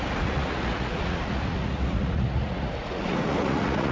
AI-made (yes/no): yes